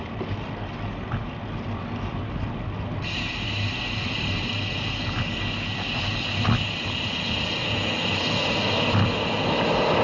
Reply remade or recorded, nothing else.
recorded